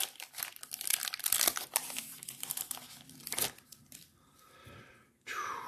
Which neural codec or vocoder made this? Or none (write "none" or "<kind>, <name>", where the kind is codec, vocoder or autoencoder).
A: none